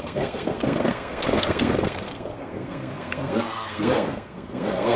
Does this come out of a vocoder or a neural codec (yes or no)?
yes